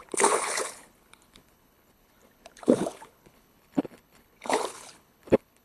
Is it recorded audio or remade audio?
remade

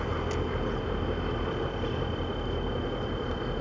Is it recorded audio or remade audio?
recorded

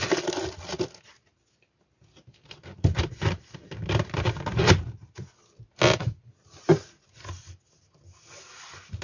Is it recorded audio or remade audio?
recorded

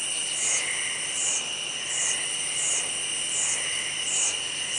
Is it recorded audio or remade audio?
recorded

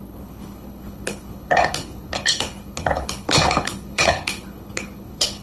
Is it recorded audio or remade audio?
remade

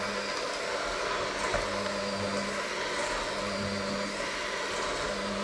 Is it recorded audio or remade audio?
recorded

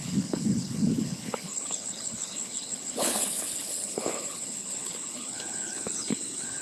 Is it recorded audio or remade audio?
remade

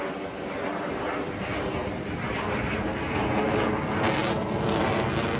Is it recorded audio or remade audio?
recorded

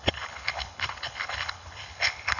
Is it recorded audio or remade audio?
remade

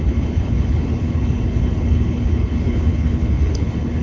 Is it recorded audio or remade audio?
remade